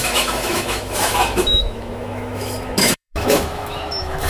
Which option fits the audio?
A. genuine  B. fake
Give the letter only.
B